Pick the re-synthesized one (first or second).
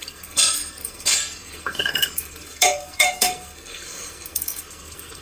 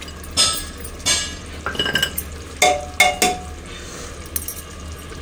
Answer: first